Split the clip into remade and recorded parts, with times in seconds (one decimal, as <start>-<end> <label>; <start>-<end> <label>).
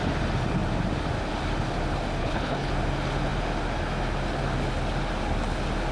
0.0-2.2 recorded; 2.2-2.7 remade; 2.7-5.9 recorded